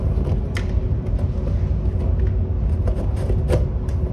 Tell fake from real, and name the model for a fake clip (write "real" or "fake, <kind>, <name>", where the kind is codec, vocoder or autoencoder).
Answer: real